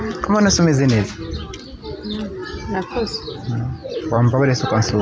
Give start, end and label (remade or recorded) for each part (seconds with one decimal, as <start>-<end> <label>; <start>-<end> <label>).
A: 0.0-3.8 recorded; 3.8-5.0 remade